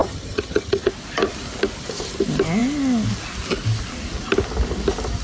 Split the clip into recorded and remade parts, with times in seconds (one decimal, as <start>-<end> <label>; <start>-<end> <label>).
0.0-0.9 remade; 0.9-5.2 recorded